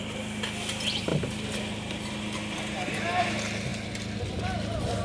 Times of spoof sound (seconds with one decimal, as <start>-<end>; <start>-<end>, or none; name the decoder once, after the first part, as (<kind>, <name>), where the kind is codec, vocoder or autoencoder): none